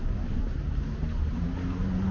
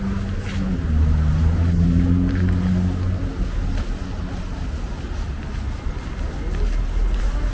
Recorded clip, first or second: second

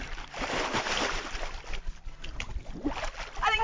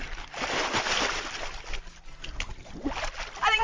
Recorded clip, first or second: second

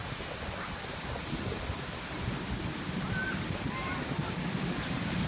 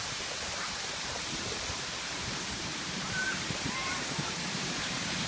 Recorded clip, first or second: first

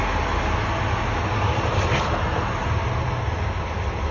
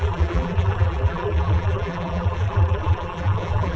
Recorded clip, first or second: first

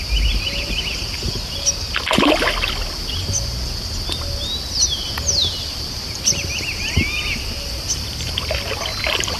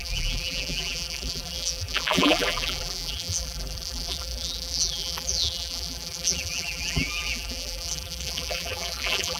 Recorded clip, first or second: first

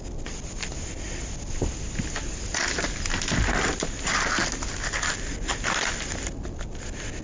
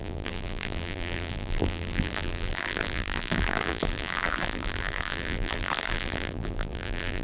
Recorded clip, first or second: first